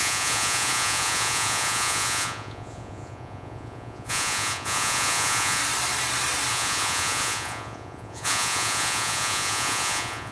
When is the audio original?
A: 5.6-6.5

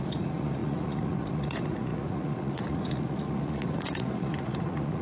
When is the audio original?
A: none

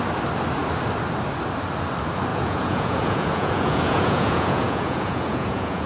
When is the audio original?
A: 0.0-2.3

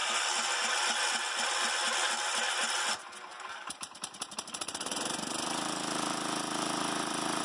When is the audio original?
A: 0.0-3.3

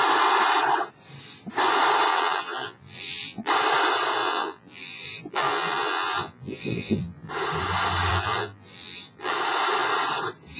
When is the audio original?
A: 0.0-2.1; 3.5-4.2; 7.3-8.1; 9.3-10.6

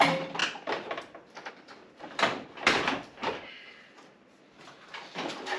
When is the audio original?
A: 0.0-5.6